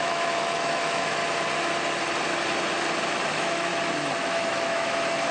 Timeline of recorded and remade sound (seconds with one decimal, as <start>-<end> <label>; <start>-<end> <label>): 0.0-1.2 remade; 1.2-3.3 recorded; 3.3-3.7 remade; 3.7-4.2 recorded; 4.2-5.3 remade